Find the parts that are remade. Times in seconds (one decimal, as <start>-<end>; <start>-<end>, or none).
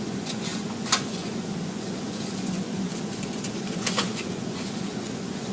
0.0-5.5